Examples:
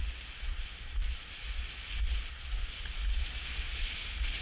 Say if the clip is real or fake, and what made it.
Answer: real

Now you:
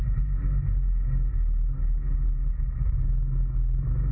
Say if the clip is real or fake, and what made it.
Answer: real